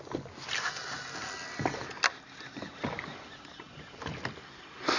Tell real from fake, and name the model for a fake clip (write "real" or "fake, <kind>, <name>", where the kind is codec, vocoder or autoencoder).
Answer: real